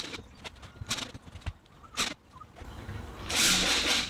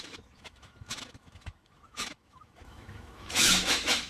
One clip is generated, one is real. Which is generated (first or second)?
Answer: second